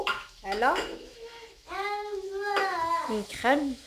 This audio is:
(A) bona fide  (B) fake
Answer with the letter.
B